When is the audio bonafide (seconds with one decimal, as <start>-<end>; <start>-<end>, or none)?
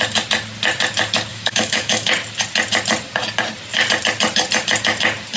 0.0-1.3; 2.1-5.4